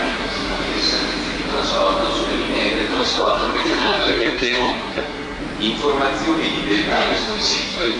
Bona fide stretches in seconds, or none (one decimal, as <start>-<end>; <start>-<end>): 0.7-2.9; 5.4-6.9